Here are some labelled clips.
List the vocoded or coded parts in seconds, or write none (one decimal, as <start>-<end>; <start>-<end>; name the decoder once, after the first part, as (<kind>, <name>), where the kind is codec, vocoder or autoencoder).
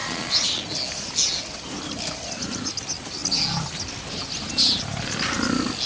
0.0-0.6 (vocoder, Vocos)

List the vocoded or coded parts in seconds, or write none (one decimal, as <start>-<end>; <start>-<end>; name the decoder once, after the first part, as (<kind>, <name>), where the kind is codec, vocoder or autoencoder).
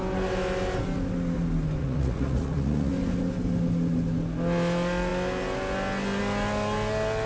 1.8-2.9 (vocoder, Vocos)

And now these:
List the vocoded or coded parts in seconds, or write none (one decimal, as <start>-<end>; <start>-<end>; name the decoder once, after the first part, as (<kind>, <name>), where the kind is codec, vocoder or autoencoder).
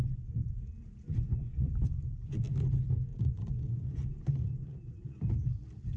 1.1-2.3 (vocoder, Vocos); 3.1-5.2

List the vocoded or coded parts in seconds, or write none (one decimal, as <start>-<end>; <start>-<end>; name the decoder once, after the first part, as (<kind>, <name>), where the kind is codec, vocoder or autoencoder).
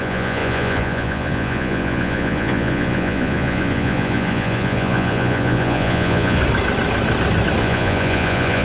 0.0-6.4 (vocoder, Vocos); 7.6-8.6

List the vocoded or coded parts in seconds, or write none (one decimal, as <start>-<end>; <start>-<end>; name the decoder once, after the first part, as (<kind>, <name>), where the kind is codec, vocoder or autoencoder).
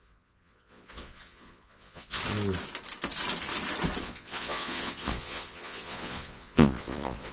0.0-2.2 (vocoder, Vocos); 4.0-7.3